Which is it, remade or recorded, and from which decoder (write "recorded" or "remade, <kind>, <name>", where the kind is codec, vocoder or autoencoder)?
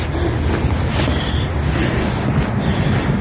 recorded